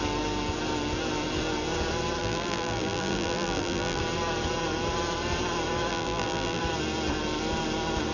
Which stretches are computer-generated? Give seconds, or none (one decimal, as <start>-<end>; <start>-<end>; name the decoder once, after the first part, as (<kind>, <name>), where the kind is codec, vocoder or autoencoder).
2.2-4.0 (vocoder, BigVGAN v2); 5.9-6.6